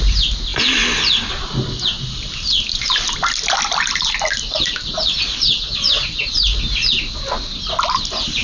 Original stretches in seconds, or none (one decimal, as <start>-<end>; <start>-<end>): 0.0-8.4

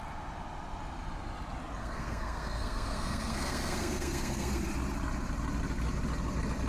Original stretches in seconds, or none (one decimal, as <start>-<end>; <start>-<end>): 0.0-1.8; 4.6-6.7